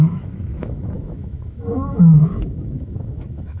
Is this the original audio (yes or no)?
no